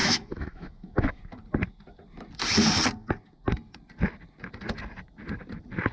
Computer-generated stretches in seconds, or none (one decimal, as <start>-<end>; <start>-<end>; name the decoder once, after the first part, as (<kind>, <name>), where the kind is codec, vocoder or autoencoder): 0.0-1.2 (autoencoder, DAC-VAE)

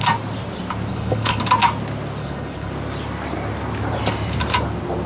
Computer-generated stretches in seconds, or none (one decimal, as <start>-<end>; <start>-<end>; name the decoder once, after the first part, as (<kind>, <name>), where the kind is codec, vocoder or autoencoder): 0.9-1.4 (codec, HILCodec); 2.2-2.7

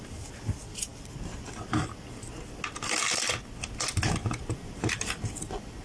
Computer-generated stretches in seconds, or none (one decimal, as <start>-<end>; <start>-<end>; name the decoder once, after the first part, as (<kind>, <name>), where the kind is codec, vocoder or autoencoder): none

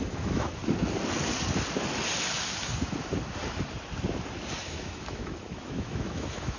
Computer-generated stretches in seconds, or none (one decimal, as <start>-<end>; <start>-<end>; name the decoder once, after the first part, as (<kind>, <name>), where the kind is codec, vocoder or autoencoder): 0.0-0.6 (autoencoder, DAC-VAE); 4.6-6.6

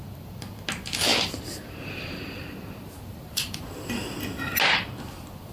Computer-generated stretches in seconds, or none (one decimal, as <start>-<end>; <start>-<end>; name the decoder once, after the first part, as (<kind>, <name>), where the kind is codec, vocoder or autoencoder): 1.1-3.6 (vocoder, BigVGAN v2)